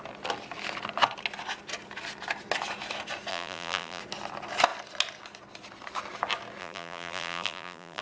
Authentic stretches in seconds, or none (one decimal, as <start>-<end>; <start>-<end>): 0.0-3.3; 4.0-6.6